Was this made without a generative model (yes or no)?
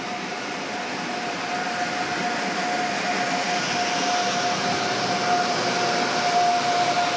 yes